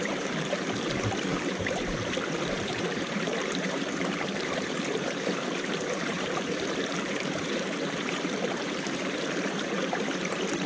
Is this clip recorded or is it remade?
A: remade